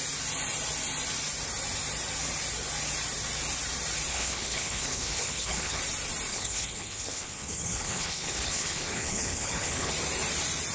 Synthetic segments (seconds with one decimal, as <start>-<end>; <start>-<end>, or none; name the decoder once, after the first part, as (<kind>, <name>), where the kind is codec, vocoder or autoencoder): 4.1-5.8 (codec, HILCodec); 6.3-9.9